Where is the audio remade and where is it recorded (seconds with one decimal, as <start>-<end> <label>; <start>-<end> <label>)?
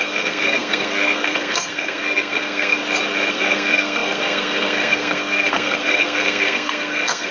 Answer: 0.0-2.8 remade; 2.8-3.3 recorded; 3.3-7.3 remade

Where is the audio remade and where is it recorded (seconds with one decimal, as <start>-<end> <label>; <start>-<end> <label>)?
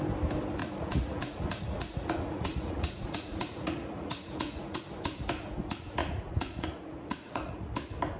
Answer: 0.0-0.6 recorded; 0.6-4.8 remade; 4.8-6.0 recorded; 6.0-7.7 remade; 7.7-8.2 recorded